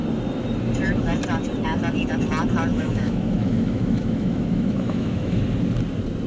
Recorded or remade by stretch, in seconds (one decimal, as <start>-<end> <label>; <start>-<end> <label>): 0.0-2.7 recorded; 2.7-5.4 remade; 5.4-6.3 recorded